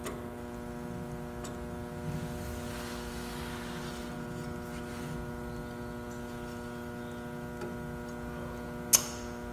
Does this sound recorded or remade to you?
recorded